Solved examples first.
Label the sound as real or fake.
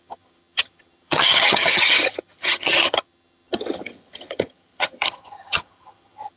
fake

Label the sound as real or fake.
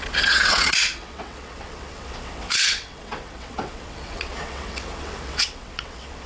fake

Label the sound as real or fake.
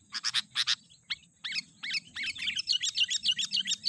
real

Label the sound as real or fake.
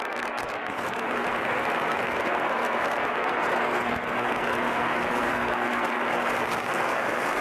fake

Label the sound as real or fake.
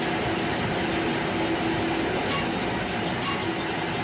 real